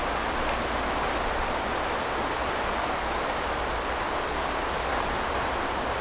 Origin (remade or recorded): recorded